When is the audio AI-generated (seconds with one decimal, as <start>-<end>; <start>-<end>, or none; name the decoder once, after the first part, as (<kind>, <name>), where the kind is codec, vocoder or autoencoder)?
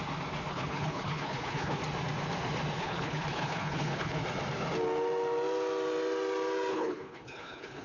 0.5-1.8 (codec, HILCodec); 2.8-4.2; 6.7-7.8